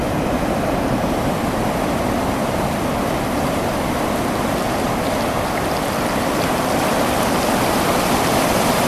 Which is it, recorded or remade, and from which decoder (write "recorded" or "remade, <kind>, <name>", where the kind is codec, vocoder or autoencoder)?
recorded